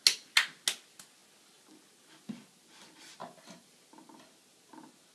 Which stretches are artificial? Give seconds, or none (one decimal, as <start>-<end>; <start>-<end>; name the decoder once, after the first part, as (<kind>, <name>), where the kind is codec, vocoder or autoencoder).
3.2-3.8 (vocoder, BigVGAN v2)